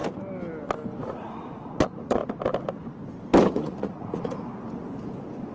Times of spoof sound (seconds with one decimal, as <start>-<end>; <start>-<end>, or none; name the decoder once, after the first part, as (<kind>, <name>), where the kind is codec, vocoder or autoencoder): 1.1-2.2 (vocoder, Vocos); 3.5-4.5